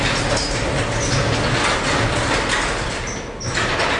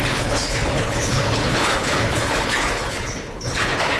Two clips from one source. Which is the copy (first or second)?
second